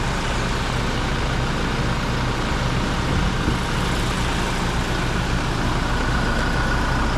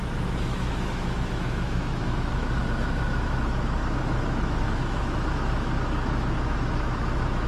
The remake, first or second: second